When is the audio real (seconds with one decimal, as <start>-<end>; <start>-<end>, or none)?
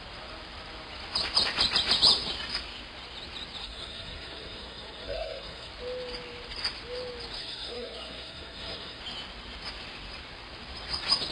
0.0-3.6; 5.7-7.4; 9.0-11.3